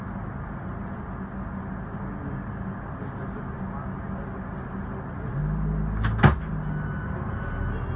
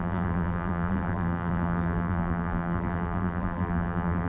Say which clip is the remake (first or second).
second